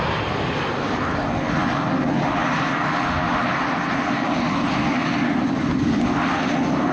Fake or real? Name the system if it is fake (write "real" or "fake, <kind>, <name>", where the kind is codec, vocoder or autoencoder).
real